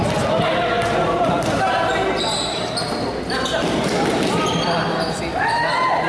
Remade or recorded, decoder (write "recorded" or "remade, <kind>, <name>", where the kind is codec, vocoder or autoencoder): recorded